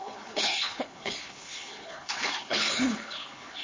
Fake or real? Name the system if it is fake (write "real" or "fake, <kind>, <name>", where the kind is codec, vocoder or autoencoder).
fake, codec, HILCodec